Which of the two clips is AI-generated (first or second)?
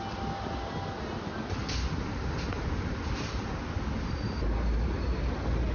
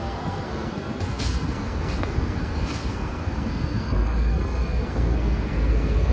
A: second